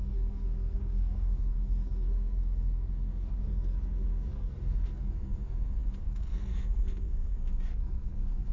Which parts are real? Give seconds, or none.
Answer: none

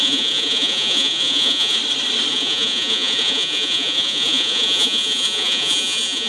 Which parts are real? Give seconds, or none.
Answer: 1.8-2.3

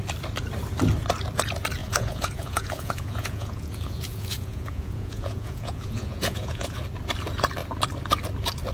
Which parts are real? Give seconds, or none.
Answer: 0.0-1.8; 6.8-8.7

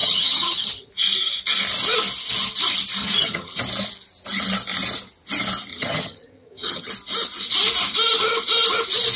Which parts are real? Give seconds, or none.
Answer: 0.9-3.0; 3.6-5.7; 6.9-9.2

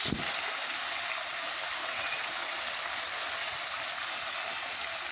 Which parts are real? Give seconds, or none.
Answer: 0.0-1.8; 2.6-5.1

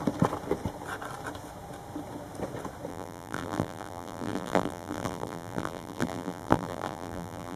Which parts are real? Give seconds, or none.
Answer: 0.0-2.9

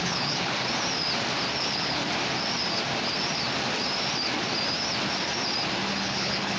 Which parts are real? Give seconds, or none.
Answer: 0.6-1.6; 2.0-6.0

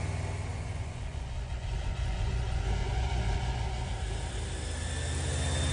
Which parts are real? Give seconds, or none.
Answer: 0.0-0.5; 3.9-5.7